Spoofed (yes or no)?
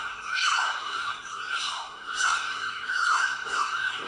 yes